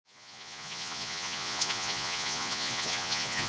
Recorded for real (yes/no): no